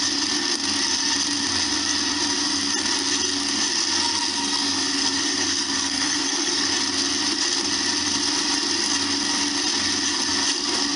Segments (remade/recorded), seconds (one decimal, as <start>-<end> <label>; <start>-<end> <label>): 0.0-4.3 recorded; 4.3-6.7 remade; 6.7-11.0 recorded